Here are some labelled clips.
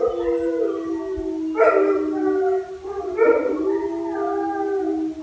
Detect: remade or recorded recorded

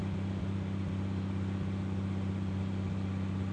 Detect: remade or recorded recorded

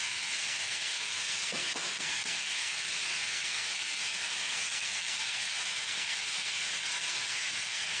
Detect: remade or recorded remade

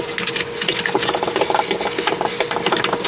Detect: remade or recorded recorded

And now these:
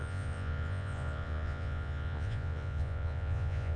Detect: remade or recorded remade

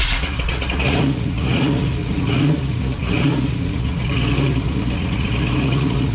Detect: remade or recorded remade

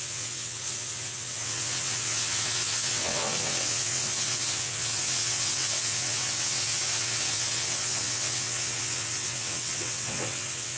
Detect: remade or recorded remade